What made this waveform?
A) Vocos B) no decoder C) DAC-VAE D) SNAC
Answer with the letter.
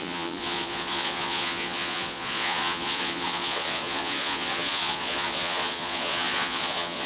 A